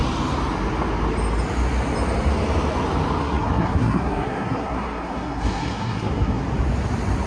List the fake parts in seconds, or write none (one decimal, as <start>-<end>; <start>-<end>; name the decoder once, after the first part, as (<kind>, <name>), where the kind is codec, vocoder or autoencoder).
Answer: 3.2-6.4 (codec, SNAC)